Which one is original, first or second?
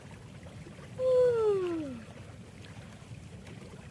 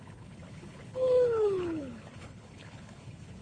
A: first